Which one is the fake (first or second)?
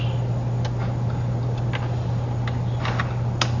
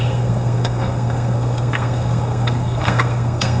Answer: second